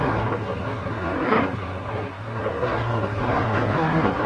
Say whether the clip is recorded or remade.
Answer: remade